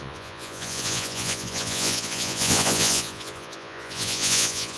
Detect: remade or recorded remade